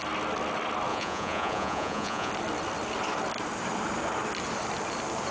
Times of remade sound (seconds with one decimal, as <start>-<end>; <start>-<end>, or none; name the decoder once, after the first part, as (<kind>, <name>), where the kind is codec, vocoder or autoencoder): 0.9-2.3 (vocoder, Vocos)